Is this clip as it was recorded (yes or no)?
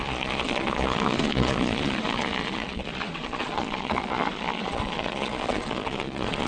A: no